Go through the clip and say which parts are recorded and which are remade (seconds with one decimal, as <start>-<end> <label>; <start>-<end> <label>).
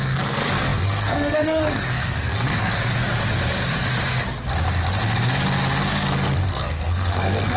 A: 0.0-2.9 remade; 2.9-5.9 recorded; 5.9-7.6 remade